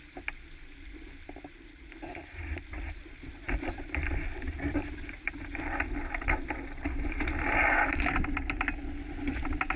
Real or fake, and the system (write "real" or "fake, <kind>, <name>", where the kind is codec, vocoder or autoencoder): real